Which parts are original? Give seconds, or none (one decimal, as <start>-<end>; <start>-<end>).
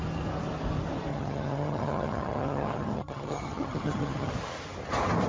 0.0-1.1; 4.3-5.3